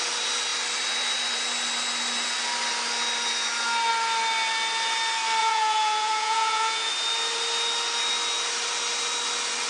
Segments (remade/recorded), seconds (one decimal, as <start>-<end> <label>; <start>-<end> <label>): 0.0-5.4 recorded; 5.4-6.9 remade; 6.9-9.7 recorded